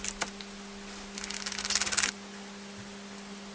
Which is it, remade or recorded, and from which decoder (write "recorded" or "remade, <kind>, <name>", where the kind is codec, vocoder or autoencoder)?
recorded